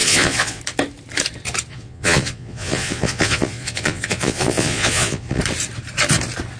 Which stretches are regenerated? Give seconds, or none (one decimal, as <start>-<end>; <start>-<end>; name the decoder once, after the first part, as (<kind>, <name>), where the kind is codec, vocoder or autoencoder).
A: 0.0-0.6 (vocoder, Vocos); 1.7-5.4